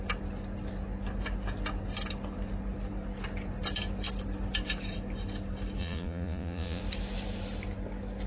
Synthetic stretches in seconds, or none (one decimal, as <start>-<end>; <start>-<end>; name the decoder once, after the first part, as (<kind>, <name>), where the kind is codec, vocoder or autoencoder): 5.8-6.8 (vocoder, Vocos)